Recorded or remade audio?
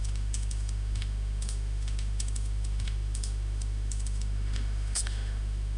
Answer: remade